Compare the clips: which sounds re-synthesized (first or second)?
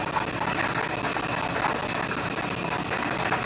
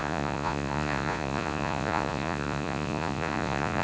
second